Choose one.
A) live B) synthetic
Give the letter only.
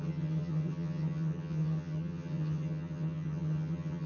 B